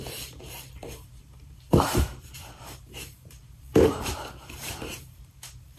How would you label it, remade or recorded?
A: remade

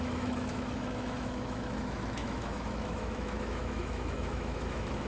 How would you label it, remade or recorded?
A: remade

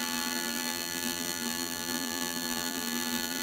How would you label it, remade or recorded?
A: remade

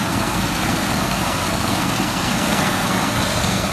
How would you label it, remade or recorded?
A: remade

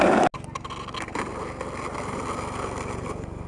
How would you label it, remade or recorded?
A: recorded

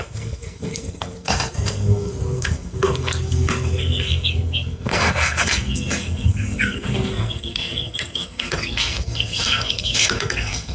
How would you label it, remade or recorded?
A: remade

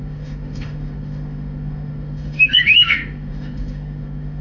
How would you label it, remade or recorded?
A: remade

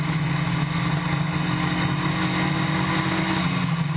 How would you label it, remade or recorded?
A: recorded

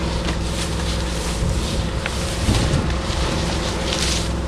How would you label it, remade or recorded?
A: remade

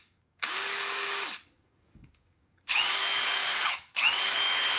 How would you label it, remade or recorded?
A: remade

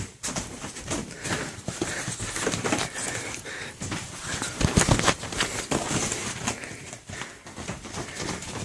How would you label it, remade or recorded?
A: recorded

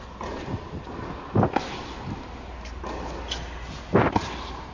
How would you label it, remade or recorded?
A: recorded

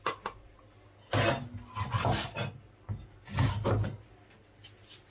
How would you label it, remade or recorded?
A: recorded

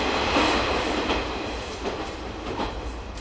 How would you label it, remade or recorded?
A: remade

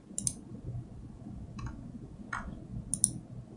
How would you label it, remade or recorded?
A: recorded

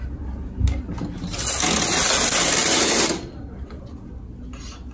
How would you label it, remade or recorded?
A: recorded